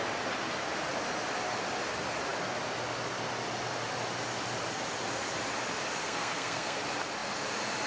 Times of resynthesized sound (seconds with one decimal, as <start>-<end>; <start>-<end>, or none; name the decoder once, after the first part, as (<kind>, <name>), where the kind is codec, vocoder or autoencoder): 6.0-6.8 (codec, SNAC)